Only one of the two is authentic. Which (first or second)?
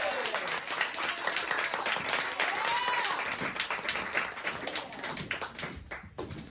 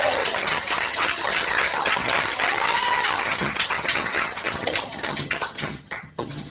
first